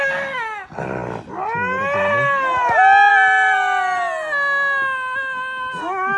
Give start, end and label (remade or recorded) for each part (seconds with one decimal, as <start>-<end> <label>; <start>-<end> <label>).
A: 0.0-6.2 recorded

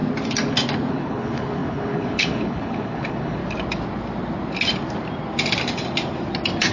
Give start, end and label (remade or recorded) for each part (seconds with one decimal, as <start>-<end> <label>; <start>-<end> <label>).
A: 0.0-0.9 recorded; 0.9-3.4 remade; 3.4-6.7 recorded

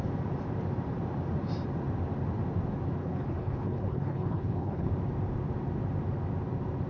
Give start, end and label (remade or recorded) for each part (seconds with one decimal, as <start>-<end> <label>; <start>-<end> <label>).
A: 0.0-3.0 recorded; 3.0-4.9 remade; 4.9-6.9 recorded

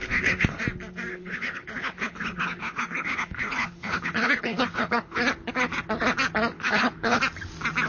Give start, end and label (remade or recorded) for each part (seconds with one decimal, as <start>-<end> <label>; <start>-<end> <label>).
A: 0.0-0.6 remade; 0.6-1.1 recorded; 1.1-5.2 remade; 5.2-6.5 recorded; 6.5-7.2 remade; 7.2-7.9 recorded

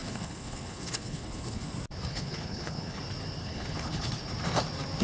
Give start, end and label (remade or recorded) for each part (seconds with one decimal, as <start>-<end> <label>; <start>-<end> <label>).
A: 0.0-1.7 remade; 1.7-2.1 recorded; 2.1-3.0 remade; 3.0-3.4 recorded; 3.4-4.1 remade; 4.1-5.0 recorded

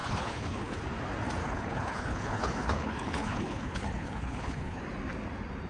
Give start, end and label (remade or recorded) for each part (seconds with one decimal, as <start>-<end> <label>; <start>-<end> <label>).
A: 0.0-0.8 remade; 0.8-1.4 recorded; 1.4-4.8 remade; 4.8-5.7 recorded